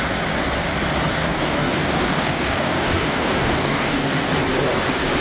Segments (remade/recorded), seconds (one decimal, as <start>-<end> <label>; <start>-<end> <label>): 0.0-1.2 recorded; 1.2-4.3 remade; 4.3-5.2 recorded